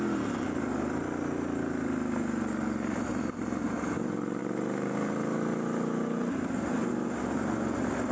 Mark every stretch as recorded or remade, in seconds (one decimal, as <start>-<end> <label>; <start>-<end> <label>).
0.0-3.1 recorded; 3.1-3.7 remade; 3.7-4.4 recorded; 4.4-6.9 remade; 6.9-8.1 recorded